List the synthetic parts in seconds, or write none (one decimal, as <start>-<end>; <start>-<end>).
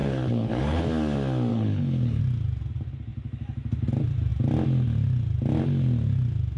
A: 0.0-0.8; 1.5-2.2